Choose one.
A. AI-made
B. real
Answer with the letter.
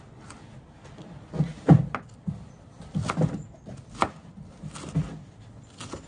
B